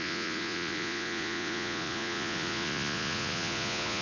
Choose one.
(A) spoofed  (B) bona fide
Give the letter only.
A